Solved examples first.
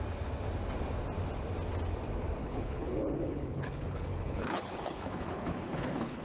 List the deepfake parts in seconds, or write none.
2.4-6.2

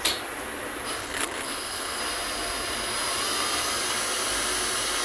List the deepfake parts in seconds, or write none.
1.0-2.0